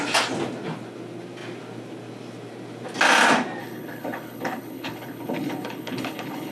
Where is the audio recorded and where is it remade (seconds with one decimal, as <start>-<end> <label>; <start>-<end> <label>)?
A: 0.0-3.6 recorded; 3.6-6.5 remade